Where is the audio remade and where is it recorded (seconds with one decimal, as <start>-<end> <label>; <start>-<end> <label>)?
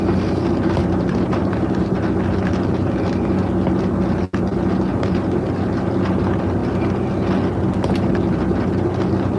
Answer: 0.0-0.8 recorded; 0.8-1.4 remade; 1.4-4.9 recorded; 4.9-5.5 remade; 5.5-9.4 recorded